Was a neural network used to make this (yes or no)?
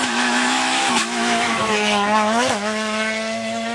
yes